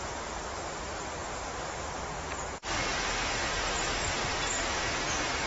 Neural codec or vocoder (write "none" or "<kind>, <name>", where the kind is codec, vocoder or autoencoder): none